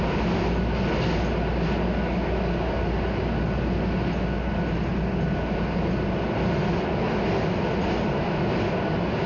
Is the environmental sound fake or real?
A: real